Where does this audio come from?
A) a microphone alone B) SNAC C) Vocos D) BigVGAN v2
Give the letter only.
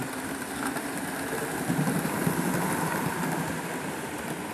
A